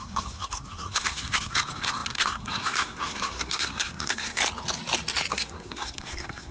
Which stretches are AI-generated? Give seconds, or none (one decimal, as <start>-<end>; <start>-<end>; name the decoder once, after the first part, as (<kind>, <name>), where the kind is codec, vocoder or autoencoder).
0.0-4.4 (codec, SNAC); 5.3-6.5